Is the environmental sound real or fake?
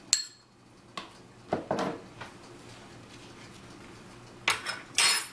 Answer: real